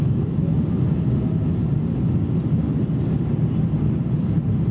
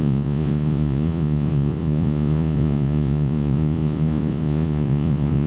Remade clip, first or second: second